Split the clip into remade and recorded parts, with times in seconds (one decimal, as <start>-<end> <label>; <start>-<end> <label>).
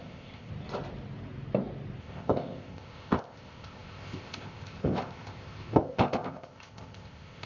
0.0-0.5 remade; 0.5-2.0 recorded; 2.0-7.5 remade